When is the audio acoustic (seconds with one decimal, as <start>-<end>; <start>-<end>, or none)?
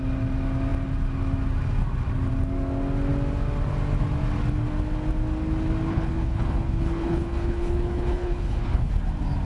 0.0-5.9; 8.9-9.4